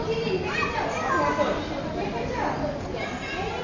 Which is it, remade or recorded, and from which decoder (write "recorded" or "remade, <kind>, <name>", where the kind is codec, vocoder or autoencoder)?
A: recorded